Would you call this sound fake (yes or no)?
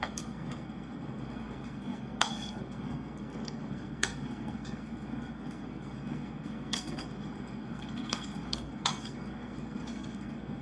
yes